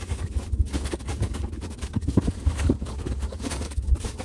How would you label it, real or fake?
fake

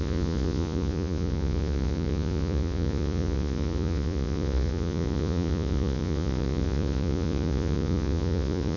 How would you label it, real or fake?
fake